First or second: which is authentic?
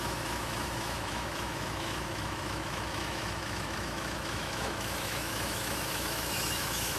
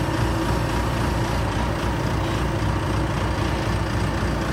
second